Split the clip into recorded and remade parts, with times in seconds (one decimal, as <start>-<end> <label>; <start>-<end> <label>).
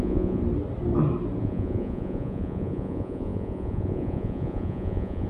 0.0-0.4 remade; 0.4-1.4 recorded; 1.4-5.3 remade